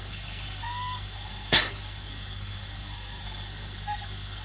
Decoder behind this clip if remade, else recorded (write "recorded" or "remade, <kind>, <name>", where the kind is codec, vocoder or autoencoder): remade, codec, SNAC